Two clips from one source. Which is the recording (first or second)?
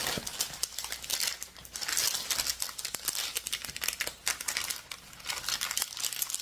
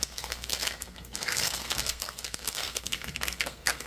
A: first